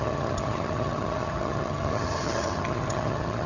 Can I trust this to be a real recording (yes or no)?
no